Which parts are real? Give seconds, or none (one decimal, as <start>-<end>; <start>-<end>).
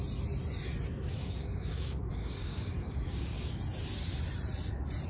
0.0-0.9; 3.6-5.1